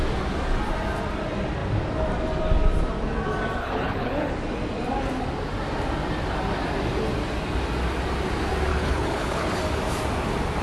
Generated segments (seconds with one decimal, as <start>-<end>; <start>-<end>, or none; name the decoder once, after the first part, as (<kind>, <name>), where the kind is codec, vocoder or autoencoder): 3.6-4.3 (codec, HILCodec); 8.7-9.6